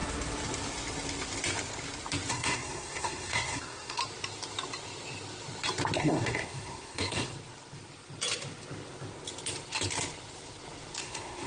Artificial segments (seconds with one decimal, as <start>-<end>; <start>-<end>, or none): 2.3-4.0; 6.0-7.3; 11.0-11.5